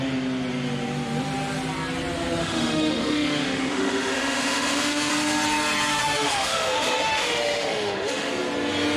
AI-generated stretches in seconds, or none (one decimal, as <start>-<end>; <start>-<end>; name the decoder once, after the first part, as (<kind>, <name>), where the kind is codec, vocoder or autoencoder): 2.4-5.1 (autoencoder, DAC-VAE); 6.0-8.3